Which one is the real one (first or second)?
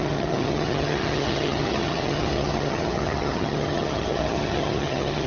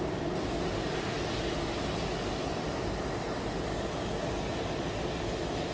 second